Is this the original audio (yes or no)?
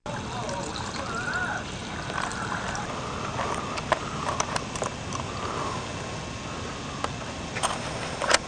yes